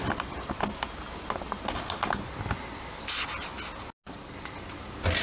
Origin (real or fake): real